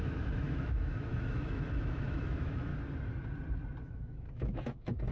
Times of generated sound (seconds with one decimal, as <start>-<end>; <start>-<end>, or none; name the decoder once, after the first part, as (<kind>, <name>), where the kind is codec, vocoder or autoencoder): 0.0-2.7 (autoencoder, DAC-VAE); 3.8-5.1